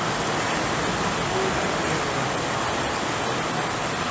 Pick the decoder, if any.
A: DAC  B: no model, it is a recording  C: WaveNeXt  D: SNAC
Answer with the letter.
B